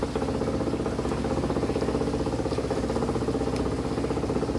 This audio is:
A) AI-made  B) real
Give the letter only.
B